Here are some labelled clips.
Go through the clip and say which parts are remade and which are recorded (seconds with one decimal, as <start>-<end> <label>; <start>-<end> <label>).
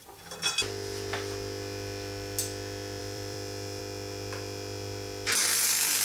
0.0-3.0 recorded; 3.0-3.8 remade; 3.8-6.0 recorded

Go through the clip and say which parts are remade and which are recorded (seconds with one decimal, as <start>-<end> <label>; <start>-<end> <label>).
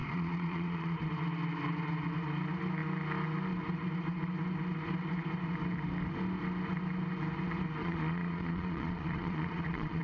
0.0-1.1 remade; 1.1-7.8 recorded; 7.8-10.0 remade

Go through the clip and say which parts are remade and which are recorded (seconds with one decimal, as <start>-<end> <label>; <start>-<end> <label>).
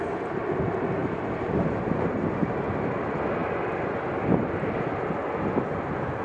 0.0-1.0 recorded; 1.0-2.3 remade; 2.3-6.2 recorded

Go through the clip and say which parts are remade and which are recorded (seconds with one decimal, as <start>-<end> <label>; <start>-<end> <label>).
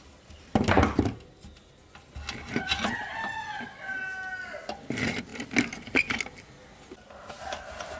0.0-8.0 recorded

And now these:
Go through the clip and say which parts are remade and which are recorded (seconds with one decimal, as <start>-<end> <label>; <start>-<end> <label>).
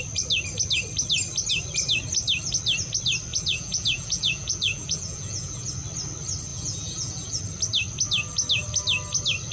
0.0-3.3 recorded; 3.3-5.7 remade; 5.7-6.5 recorded; 6.5-7.4 remade; 7.4-9.5 recorded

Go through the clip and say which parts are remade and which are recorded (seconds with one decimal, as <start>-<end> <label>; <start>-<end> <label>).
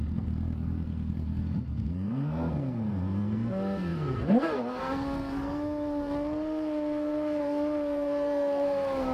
0.0-9.1 remade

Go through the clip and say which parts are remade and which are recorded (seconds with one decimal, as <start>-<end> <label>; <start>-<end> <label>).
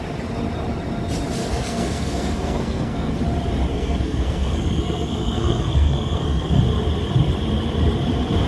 0.0-1.4 recorded; 1.4-3.2 remade; 3.2-3.7 recorded; 3.7-6.6 remade; 6.6-8.5 recorded